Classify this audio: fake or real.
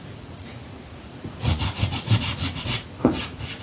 fake